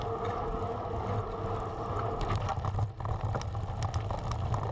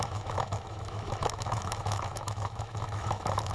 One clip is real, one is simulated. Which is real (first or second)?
first